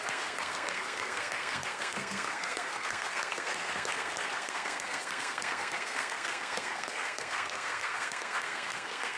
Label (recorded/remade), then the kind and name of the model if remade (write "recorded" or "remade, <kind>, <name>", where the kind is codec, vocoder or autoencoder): remade, codec, SNAC